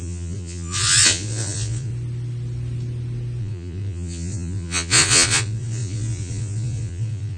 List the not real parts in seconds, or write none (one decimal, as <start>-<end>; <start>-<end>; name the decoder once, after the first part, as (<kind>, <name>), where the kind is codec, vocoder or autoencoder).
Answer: 0.0-1.9 (vocoder, Vocos); 3.4-7.4

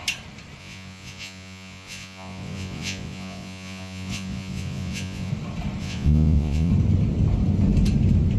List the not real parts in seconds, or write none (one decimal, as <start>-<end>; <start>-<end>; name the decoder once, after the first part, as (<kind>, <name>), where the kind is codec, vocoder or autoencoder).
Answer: 0.6-5.3 (vocoder, Vocos); 5.8-6.7

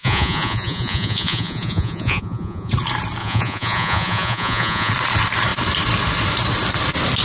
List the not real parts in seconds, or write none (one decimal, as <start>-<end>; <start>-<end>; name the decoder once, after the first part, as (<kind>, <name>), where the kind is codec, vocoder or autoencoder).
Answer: 0.0-2.7 (vocoder, Vocos); 3.2-4.9

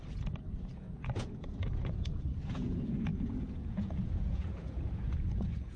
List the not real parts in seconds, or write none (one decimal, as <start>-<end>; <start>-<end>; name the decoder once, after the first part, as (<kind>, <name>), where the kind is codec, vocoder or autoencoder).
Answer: 0.7-5.8 (vocoder, Vocos)

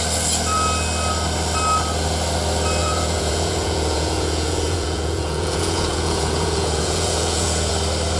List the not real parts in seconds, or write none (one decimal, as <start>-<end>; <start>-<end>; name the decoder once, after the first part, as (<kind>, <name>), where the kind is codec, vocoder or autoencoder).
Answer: 2.8-7.7 (vocoder, Vocos)

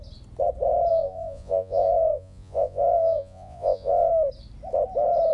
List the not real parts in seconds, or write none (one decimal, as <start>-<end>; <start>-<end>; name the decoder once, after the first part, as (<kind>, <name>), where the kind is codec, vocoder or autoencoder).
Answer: 0.9-4.1 (vocoder, Vocos)

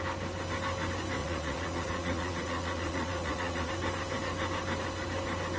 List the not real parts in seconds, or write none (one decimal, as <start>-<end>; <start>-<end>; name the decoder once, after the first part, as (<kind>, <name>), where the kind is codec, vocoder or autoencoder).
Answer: 1.2-3.7 (vocoder, Vocos)

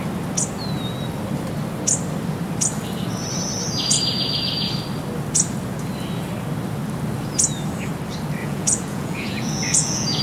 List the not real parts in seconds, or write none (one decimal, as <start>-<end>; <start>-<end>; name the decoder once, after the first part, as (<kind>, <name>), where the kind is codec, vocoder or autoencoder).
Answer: 8.4-10.2 (vocoder, Vocos)